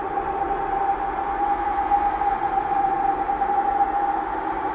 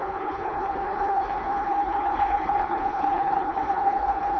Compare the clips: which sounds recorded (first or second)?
first